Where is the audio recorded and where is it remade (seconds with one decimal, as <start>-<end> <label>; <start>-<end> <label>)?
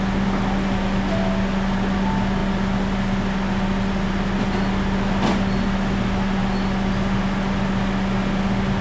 0.0-8.8 recorded